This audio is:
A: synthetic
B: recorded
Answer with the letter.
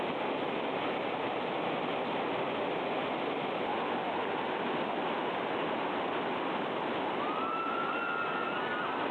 B